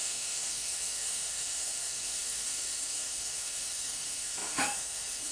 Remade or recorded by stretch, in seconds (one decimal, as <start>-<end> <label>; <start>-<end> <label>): 0.0-5.3 remade